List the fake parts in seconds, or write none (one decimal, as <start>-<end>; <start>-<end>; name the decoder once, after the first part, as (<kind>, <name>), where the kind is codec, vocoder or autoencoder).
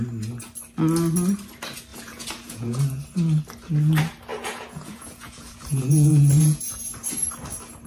1.9-2.8 (vocoder, Vocos); 4.3-7.0